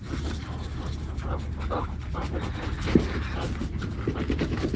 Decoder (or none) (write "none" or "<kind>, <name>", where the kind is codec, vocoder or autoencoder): none